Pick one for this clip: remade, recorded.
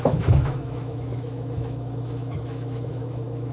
remade